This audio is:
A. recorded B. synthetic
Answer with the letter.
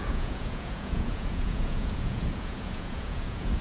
B